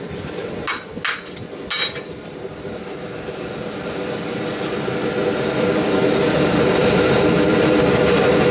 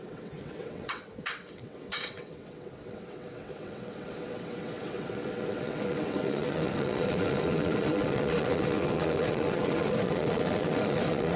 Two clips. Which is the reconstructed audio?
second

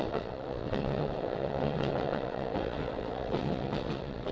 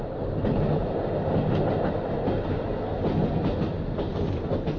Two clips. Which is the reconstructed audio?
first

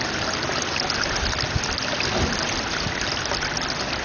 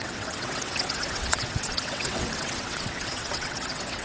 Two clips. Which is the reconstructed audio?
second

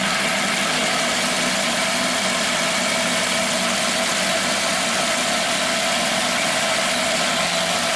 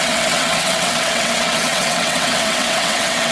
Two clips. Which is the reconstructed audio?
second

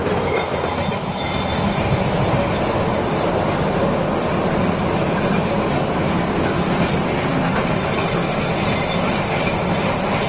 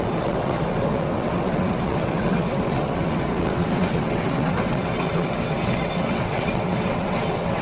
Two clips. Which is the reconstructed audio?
second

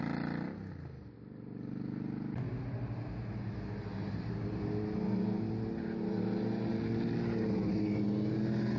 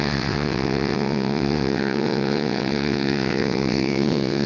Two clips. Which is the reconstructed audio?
second